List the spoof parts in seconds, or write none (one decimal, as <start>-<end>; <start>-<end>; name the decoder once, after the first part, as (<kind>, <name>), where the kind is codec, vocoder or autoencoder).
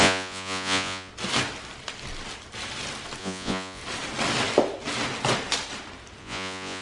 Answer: 0.0-1.1 (vocoder, Vocos); 3.2-3.8; 6.2-6.8